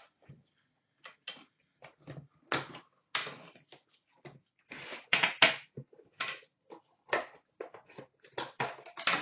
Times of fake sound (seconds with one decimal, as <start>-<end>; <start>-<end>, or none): none